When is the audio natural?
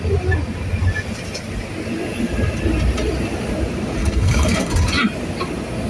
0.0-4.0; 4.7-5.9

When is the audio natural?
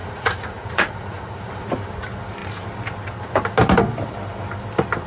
1.7-5.1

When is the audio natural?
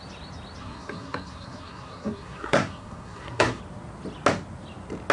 0.0-0.6; 3.6-5.1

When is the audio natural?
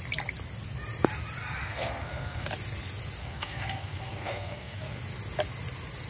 0.0-1.6; 2.5-3.2; 5.0-6.1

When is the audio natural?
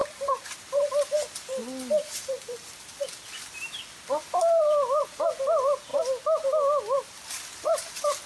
5.9-7.2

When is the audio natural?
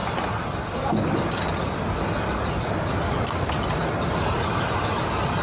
0.0-5.4